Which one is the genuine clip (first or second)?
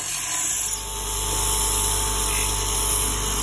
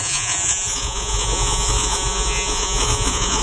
first